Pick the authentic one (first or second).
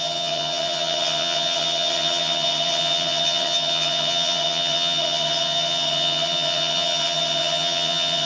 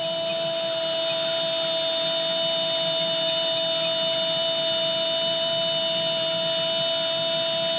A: second